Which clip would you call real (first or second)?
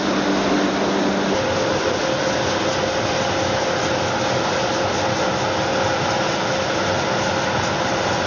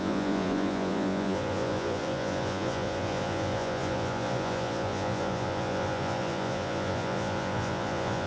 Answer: first